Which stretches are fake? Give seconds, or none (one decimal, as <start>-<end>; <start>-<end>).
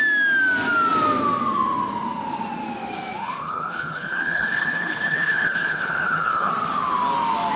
3.2-6.5